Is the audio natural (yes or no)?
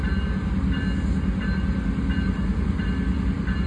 yes